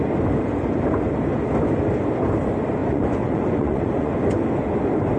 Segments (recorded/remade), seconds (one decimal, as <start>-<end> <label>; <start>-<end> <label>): 0.0-2.8 recorded; 2.8-4.1 remade; 4.1-5.2 recorded